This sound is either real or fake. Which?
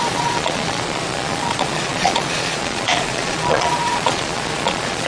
fake